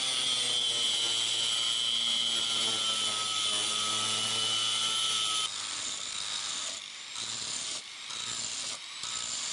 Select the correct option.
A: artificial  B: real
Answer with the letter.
B